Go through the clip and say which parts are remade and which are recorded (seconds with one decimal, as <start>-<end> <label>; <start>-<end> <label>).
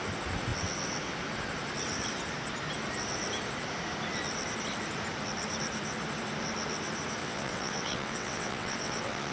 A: 0.0-7.2 recorded; 7.2-9.3 remade